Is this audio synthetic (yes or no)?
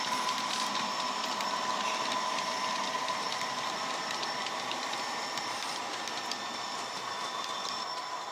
yes